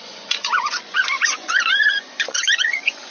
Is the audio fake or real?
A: fake